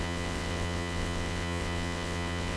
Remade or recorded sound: remade